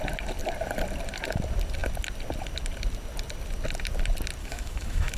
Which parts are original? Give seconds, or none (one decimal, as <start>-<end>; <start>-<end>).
0.0-4.4